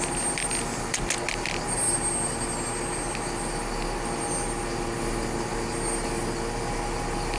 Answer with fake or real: real